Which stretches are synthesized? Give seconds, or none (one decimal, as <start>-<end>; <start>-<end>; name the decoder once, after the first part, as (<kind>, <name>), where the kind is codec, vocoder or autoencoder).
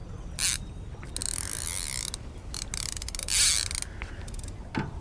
none